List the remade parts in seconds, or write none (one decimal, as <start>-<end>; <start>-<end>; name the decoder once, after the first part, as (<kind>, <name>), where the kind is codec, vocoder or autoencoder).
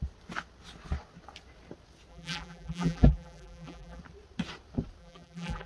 2.1-4.0 (vocoder, BigVGAN v2); 5.0-5.7